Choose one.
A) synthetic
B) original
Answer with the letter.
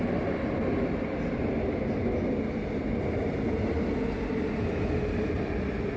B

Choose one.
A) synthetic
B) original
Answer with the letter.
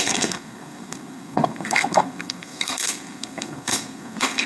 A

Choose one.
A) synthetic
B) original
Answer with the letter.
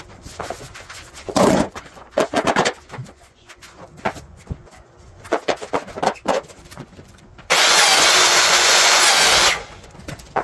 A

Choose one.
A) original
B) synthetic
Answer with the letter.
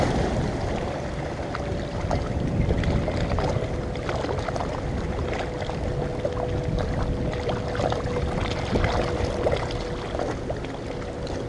A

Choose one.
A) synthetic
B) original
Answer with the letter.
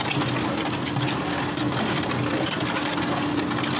B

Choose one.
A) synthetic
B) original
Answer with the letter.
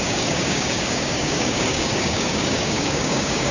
A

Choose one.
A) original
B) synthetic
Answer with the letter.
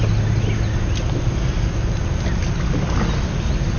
A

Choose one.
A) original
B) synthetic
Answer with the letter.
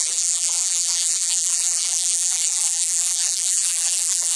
B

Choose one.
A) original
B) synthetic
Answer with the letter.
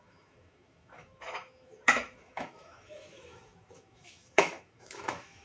B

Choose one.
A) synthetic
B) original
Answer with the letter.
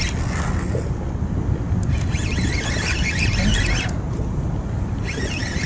B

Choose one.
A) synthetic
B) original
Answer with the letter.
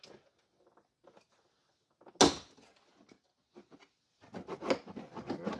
B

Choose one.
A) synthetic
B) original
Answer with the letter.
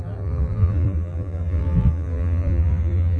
A